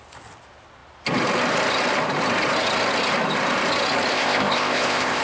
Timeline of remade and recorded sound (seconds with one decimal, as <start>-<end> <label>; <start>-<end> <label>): 0.0-4.1 recorded; 4.1-5.2 remade